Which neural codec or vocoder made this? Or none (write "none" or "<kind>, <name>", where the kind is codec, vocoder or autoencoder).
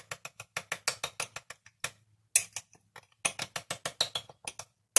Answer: none